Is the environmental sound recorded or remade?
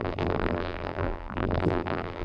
remade